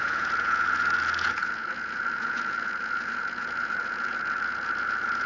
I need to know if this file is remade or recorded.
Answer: remade